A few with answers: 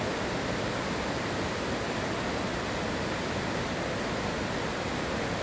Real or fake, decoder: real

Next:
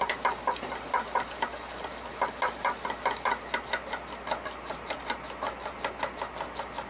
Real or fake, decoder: real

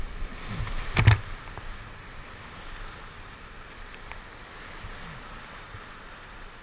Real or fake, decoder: real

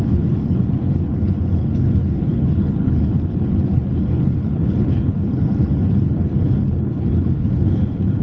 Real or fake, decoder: fake, codec, HILCodec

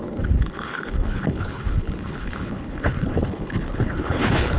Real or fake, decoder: fake, codec, HILCodec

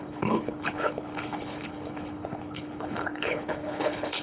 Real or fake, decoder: fake, codec, HILCodec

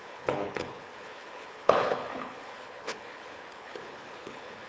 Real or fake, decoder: fake, codec, HILCodec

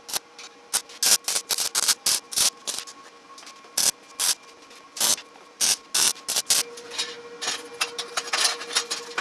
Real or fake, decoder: real